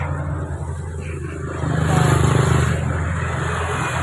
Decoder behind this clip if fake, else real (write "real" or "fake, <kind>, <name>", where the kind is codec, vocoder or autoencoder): real